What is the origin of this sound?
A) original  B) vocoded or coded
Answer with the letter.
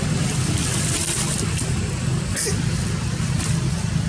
A